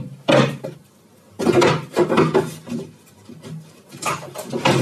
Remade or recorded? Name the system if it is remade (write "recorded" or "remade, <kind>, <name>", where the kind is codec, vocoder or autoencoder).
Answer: recorded